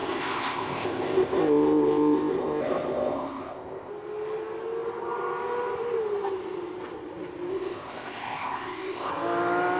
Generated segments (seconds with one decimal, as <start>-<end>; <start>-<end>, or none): 0.0-3.9; 7.5-9.1

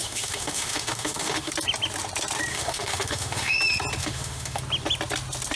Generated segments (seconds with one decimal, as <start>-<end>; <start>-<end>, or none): 0.0-1.5; 2.5-3.6; 4.0-4.6

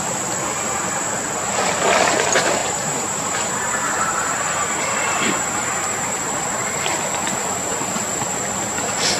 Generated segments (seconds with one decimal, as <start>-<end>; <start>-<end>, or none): 2.6-6.8

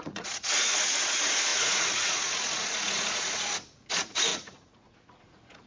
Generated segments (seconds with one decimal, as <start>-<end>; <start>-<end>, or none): 0.0-5.7